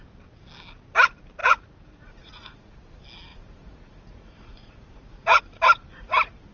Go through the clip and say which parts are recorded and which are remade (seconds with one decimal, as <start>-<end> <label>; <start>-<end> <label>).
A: 0.0-1.4 recorded; 1.4-2.8 remade; 2.8-3.3 recorded; 3.3-5.4 remade; 5.4-6.5 recorded